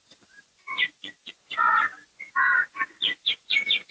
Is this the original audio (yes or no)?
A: no